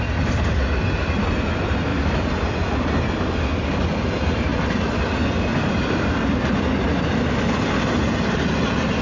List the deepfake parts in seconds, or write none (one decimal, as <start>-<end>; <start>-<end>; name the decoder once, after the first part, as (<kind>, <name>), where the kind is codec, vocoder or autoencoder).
1.9-2.7 (vocoder, BigVGAN v2); 5.5-6.1